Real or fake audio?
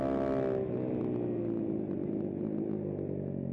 real